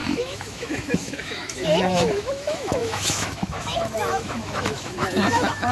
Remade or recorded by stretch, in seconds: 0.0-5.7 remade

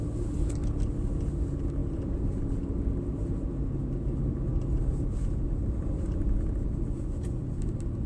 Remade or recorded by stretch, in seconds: 0.0-1.8 recorded; 1.8-2.4 remade; 2.4-8.1 recorded

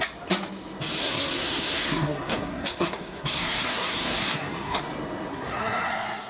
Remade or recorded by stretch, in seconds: 0.0-1.0 recorded; 1.0-4.8 remade; 4.8-5.3 recorded; 5.3-6.3 remade

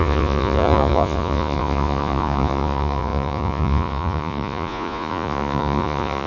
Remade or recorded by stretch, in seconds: 0.0-6.3 remade

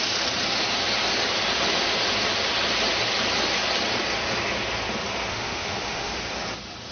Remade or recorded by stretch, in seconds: 0.0-5.3 recorded; 5.3-6.2 remade; 6.2-6.9 recorded

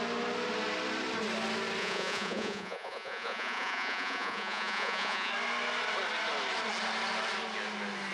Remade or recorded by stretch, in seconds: 0.0-1.8 recorded; 1.8-5.3 remade; 5.3-8.1 recorded

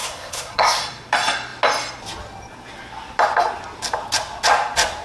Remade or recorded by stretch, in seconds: 0.0-0.8 remade; 0.8-5.0 recorded

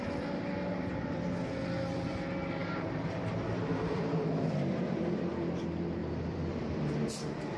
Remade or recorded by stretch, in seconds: 0.0-2.6 recorded; 2.6-5.3 remade; 5.3-6.0 recorded; 6.0-6.6 remade; 6.6-7.6 recorded